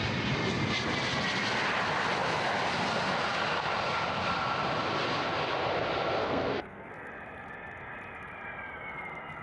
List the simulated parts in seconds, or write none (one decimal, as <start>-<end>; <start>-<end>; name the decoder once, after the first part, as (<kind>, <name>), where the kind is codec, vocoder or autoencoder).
6.2-6.9 (codec, SNAC)